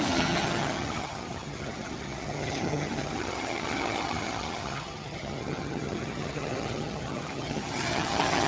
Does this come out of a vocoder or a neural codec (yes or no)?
yes